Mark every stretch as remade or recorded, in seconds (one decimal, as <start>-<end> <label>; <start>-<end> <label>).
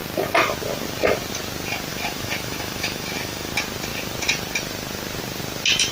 0.0-1.9 recorded; 1.9-3.5 remade; 3.5-5.9 recorded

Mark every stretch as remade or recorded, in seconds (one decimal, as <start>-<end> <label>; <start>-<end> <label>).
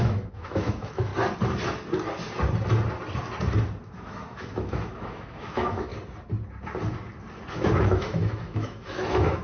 0.0-1.1 remade; 1.1-3.9 recorded; 3.9-5.9 remade; 5.9-7.5 recorded; 7.5-9.4 remade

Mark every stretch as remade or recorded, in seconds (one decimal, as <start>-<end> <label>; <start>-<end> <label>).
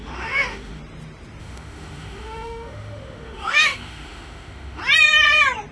0.0-0.8 remade; 0.8-1.4 recorded; 1.4-4.8 remade; 4.8-5.7 recorded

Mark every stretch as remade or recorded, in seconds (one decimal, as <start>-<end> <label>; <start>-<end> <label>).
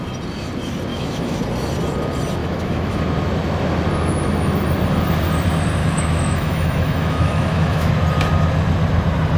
0.0-0.9 recorded; 0.9-1.4 remade; 1.4-2.4 recorded; 2.4-3.0 remade; 3.0-5.8 recorded; 5.8-7.9 remade; 7.9-9.4 recorded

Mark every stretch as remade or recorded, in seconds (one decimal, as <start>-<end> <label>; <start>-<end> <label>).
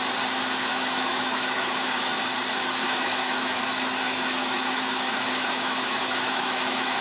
0.0-0.7 recorded; 0.7-2.2 remade; 2.2-2.8 recorded; 2.8-3.6 remade; 3.6-4.0 recorded; 4.0-7.0 remade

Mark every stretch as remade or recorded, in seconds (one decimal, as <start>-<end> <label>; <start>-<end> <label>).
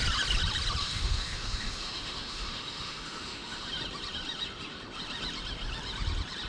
0.0-0.8 recorded; 0.8-3.7 remade; 3.7-6.5 recorded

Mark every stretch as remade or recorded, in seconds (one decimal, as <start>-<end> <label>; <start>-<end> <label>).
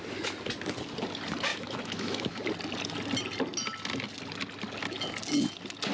0.0-1.5 recorded; 1.5-2.4 remade; 2.4-5.9 recorded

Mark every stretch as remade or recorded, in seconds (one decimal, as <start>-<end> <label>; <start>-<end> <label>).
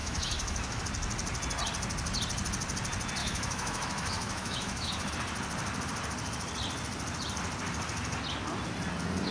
0.0-0.8 remade; 0.8-3.2 recorded; 3.2-5.1 remade; 5.1-9.3 recorded